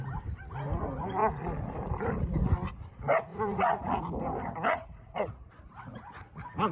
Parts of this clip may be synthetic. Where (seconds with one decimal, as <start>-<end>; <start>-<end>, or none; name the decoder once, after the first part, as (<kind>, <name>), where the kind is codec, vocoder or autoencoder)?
3.3-4.0 (vocoder, Vocos); 4.7-5.5